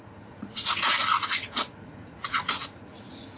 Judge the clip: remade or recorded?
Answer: remade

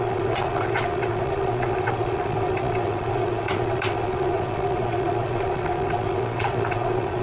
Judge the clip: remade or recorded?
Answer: remade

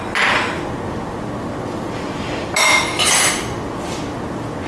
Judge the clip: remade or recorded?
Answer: recorded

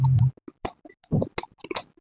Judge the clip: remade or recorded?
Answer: recorded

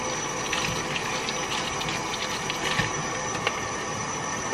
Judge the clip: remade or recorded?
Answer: recorded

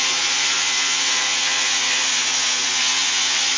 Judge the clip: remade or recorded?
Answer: remade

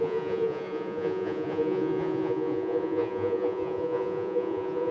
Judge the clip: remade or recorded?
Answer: remade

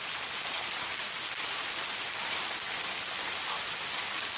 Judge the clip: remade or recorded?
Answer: recorded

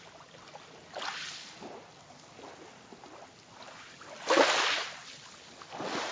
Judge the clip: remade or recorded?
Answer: recorded